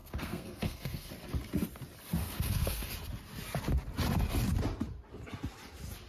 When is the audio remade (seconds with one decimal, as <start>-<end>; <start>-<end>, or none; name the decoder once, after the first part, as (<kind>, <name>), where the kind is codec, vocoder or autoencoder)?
0.0-1.1 (codec, SNAC); 2.2-2.9